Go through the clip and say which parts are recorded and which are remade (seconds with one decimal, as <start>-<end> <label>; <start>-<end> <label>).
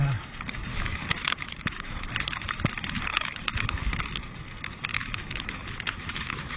0.0-0.7 recorded; 0.7-2.1 remade; 2.1-3.1 recorded; 3.1-4.0 remade; 4.0-4.9 recorded; 4.9-6.6 remade